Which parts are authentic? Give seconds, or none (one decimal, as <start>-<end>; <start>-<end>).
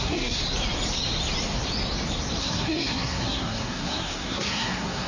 0.4-2.4